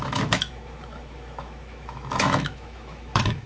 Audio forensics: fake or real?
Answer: fake